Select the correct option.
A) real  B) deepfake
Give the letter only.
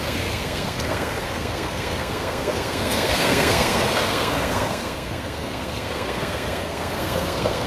B